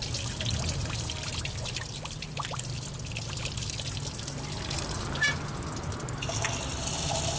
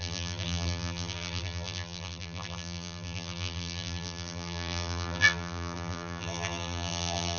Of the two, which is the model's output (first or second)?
second